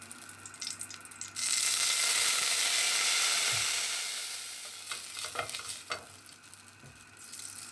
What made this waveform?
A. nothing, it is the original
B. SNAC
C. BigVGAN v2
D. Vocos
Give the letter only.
A